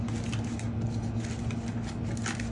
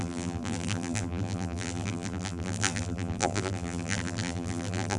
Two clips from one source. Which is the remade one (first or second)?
second